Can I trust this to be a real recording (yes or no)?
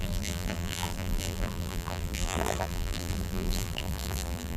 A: no